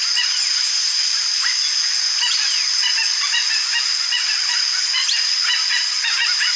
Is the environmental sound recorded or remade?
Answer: recorded